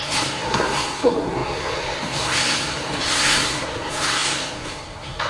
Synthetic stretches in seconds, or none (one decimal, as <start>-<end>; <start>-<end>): 0.0-5.3